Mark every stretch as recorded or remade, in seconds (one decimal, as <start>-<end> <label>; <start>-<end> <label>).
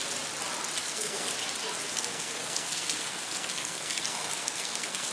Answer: 0.0-0.8 recorded; 0.8-1.3 remade; 1.3-1.9 recorded; 1.9-5.1 remade